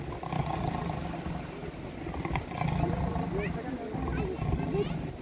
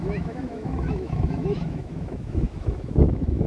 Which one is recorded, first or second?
first